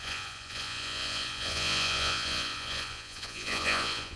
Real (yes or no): no